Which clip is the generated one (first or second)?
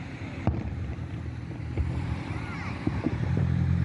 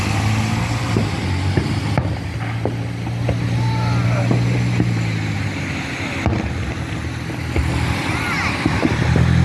first